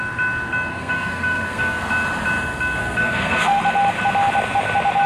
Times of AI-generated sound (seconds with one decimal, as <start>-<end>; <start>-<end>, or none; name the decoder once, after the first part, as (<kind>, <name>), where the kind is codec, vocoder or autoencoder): 0.7-1.8 (codec, SNAC); 2.8-3.6